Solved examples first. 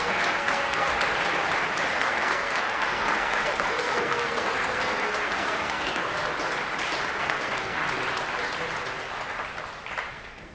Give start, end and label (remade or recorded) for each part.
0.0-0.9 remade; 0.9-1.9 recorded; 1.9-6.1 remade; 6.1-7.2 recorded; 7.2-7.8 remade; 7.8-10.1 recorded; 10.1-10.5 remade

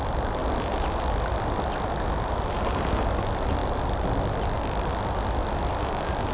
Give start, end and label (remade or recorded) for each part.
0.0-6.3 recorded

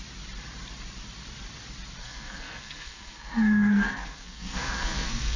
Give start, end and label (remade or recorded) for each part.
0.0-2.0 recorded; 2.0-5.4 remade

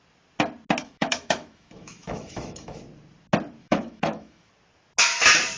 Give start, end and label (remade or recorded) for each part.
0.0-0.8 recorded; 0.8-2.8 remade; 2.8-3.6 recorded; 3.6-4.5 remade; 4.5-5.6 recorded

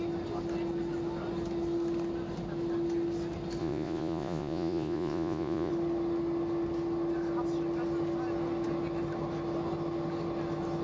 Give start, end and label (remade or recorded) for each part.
0.0-3.6 recorded; 3.6-5.7 remade; 5.7-10.8 recorded

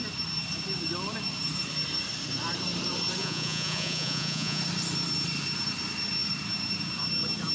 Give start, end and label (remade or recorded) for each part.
0.0-3.2 recorded; 3.2-4.6 remade; 4.6-7.5 recorded